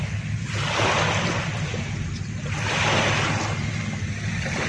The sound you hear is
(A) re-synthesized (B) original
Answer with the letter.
B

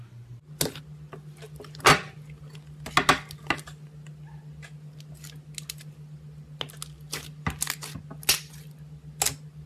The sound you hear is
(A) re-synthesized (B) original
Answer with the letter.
B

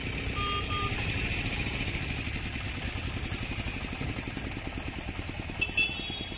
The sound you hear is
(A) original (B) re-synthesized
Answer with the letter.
A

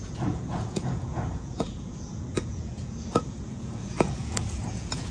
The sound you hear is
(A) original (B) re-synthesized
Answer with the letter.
B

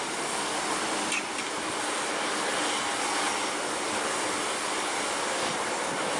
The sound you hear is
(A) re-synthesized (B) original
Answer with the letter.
B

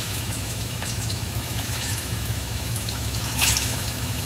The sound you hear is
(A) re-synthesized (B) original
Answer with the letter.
A